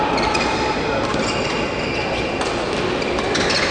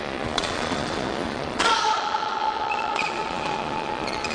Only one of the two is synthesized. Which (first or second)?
second